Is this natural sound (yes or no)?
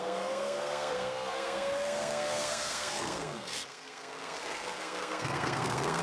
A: no